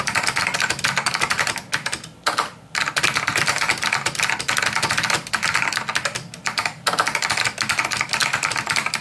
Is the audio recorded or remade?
recorded